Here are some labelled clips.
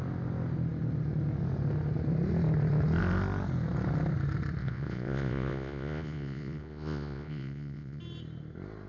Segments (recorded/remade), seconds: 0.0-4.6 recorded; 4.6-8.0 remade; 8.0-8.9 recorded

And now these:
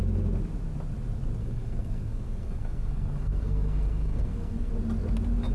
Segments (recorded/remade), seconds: 0.0-1.4 recorded; 1.4-4.7 remade; 4.7-5.5 recorded

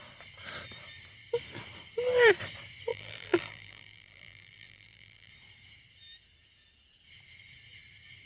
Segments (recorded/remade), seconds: 0.0-2.9 recorded; 2.9-5.3 remade; 5.3-8.3 recorded

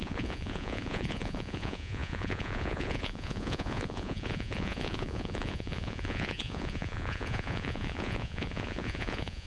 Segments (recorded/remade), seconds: 0.0-9.5 remade

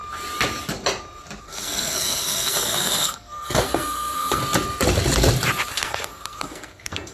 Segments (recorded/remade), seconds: 0.0-1.4 recorded; 1.4-4.4 remade; 4.4-5.7 recorded; 5.7-7.1 remade